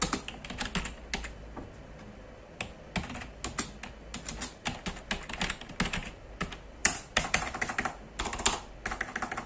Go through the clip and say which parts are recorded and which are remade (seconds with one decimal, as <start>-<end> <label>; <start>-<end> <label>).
0.0-6.8 recorded; 6.8-7.6 remade; 7.6-9.5 recorded